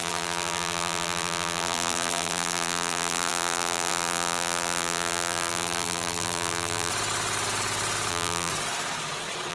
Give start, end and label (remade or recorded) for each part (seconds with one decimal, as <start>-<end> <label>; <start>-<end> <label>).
0.0-6.9 remade; 6.9-8.1 recorded; 8.1-8.5 remade; 8.5-9.5 recorded